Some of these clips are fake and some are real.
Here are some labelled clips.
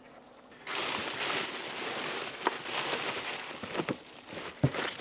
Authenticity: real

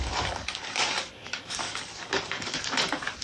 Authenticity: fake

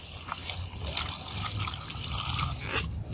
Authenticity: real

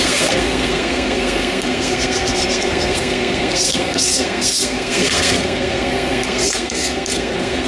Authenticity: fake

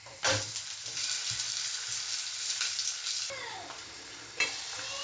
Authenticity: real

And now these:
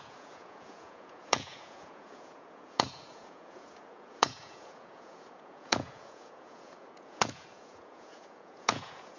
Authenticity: fake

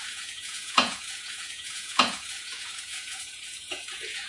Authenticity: fake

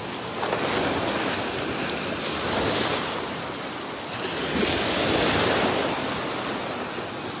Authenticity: real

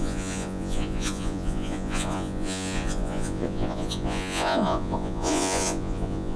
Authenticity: fake